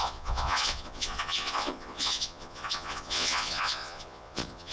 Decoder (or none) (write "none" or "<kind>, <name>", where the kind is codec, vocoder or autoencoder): vocoder, Vocos